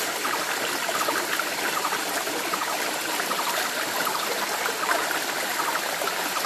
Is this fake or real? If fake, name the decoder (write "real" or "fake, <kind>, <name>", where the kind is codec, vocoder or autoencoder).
real